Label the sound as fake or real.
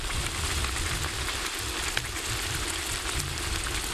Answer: real